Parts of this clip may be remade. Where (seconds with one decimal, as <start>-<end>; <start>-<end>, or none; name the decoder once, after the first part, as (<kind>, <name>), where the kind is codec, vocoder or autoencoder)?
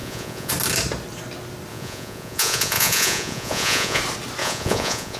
0.0-0.5 (vocoder, Vocos); 1.7-4.0; 4.4-5.2